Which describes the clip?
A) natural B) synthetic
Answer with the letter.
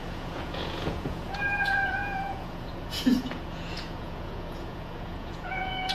B